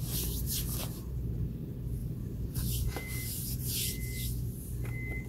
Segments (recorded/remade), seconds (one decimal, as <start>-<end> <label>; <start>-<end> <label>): 0.0-0.8 recorded; 0.8-1.3 remade; 1.3-2.0 recorded; 2.0-3.7 remade; 3.7-5.3 recorded